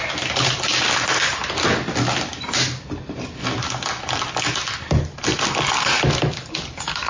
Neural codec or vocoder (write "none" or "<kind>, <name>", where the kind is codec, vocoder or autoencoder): none